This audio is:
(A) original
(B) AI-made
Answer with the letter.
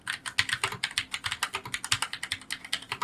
A